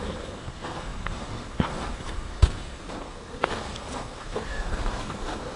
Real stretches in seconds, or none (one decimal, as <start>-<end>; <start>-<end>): none